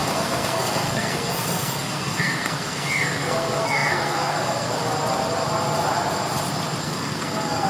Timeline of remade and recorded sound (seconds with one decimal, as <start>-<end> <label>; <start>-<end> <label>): 0.0-4.8 remade; 4.8-6.8 recorded; 6.8-7.7 remade